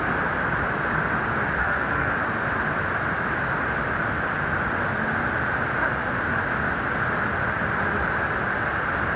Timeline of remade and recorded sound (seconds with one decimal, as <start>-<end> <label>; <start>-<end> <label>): 0.0-1.6 recorded; 1.6-2.1 remade; 2.1-9.2 recorded